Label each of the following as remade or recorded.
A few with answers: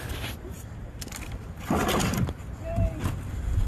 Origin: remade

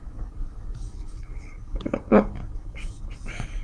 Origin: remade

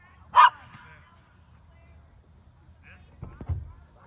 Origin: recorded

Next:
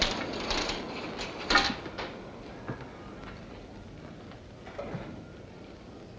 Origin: recorded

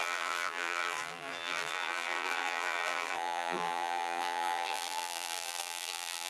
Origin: remade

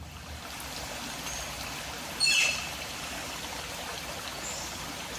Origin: recorded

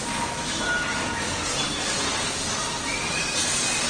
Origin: recorded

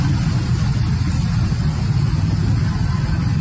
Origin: recorded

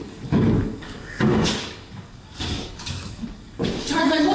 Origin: remade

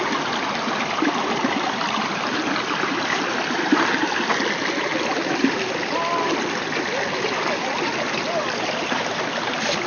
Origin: recorded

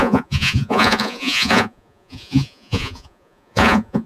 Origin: remade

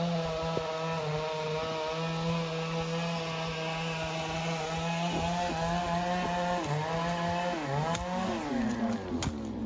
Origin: recorded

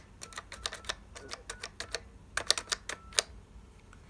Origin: recorded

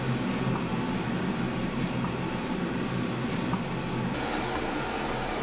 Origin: recorded